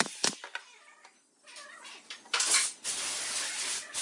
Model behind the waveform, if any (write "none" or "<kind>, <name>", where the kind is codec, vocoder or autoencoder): none